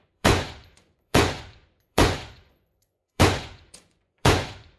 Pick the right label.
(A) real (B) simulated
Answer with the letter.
B